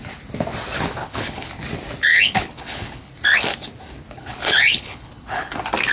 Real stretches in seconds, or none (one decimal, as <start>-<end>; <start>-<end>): 0.0-1.0; 1.5-2.1; 3.1-4.2; 5.5-5.9